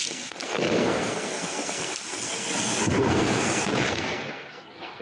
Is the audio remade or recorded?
remade